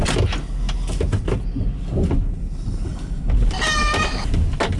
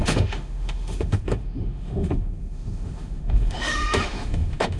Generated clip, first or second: second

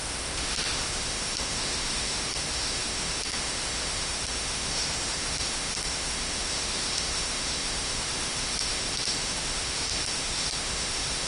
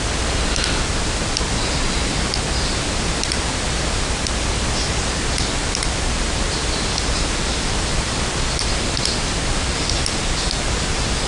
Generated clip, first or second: first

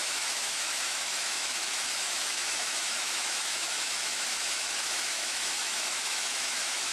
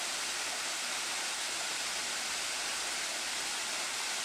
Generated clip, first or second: first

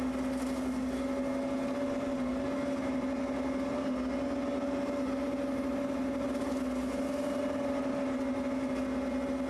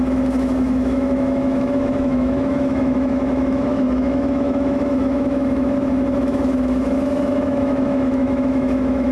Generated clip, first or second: second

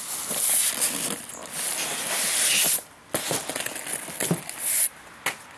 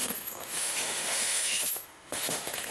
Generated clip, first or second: second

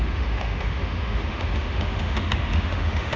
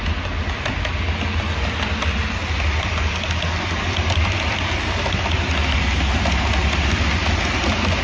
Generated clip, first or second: first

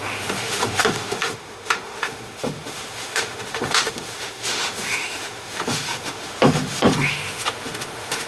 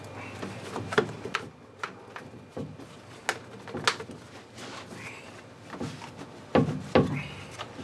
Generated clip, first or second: first